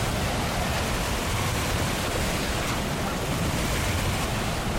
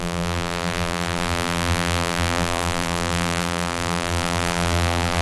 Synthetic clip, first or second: second